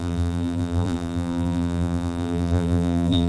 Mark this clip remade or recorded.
remade